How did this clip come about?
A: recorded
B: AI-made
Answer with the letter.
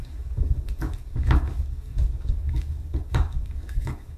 B